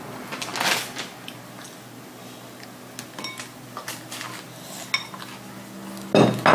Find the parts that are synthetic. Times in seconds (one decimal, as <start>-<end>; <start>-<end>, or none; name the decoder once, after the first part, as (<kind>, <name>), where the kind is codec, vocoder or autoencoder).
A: none